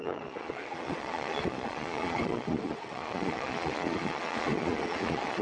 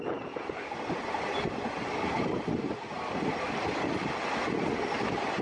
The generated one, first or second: first